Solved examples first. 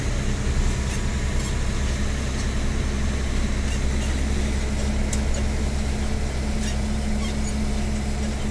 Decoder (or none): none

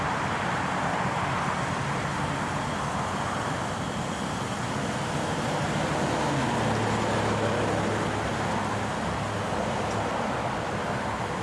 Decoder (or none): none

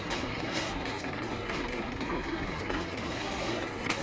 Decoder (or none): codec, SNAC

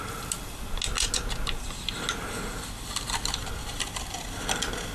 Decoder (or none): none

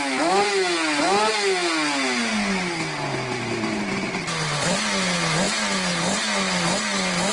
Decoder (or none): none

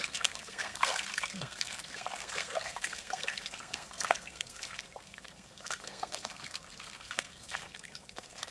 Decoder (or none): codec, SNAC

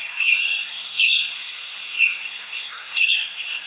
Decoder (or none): codec, SNAC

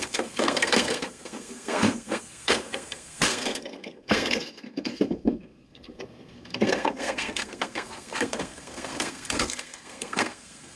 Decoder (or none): codec, SNAC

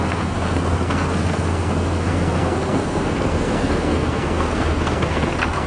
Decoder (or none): codec, SNAC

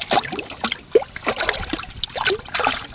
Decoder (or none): none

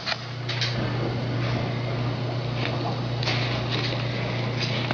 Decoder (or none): none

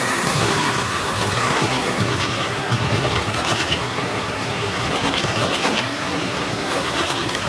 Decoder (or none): codec, SNAC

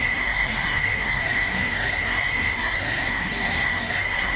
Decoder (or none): codec, SNAC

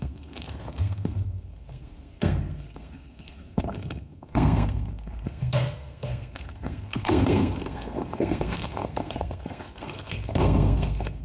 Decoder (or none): codec, SNAC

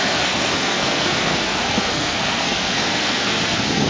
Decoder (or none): codec, SNAC